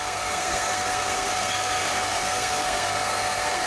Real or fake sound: fake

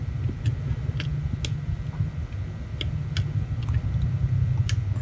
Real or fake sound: real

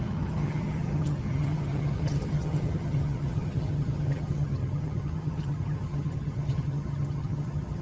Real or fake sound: fake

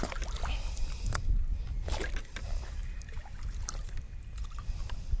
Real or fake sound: real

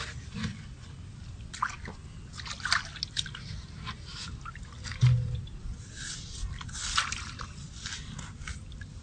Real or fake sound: real